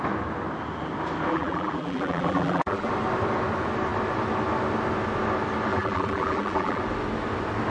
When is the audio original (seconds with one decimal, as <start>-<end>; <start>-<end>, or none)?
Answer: 0.0-1.3; 2.9-5.7; 6.8-7.7